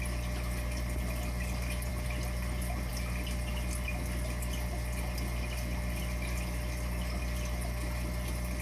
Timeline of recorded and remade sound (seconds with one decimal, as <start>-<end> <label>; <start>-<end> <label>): 0.0-8.6 recorded